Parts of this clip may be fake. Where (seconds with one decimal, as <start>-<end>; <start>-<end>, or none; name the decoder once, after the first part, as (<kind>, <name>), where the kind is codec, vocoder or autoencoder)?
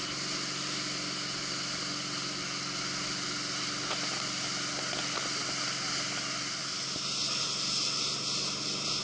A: none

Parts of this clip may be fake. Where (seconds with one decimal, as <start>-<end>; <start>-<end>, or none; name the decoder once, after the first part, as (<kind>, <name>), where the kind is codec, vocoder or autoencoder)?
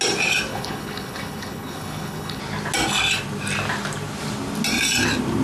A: 0.5-2.4 (codec, HILCodec)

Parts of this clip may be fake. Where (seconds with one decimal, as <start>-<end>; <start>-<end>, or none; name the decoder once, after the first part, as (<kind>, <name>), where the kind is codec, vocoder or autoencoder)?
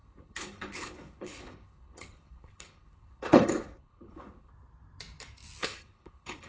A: 0.0-4.5 (codec, HILCodec); 5.6-6.5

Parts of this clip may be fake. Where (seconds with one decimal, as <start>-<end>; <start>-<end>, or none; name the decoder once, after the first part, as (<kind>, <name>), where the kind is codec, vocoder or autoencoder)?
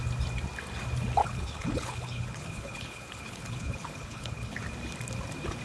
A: 1.2-4.6 (codec, HILCodec)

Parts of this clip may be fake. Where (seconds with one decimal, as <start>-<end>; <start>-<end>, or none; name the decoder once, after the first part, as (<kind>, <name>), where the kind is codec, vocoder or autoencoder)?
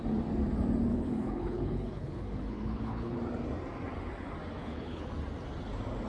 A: 0.9-3.2 (codec, HILCodec); 4.6-5.1